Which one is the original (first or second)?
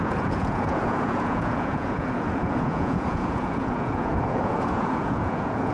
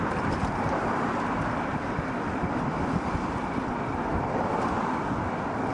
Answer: second